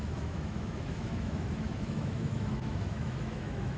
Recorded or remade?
remade